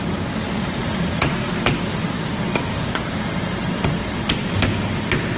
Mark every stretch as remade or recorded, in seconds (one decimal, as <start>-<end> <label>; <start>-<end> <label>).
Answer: 0.0-0.8 recorded; 0.8-1.5 remade; 1.5-5.4 recorded